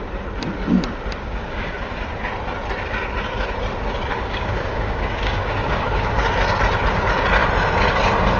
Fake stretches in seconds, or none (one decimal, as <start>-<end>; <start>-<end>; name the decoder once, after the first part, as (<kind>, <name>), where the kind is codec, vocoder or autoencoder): 1.2-2.0 (codec, DAC); 4.1-6.2